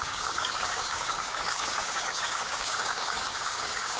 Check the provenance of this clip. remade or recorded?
remade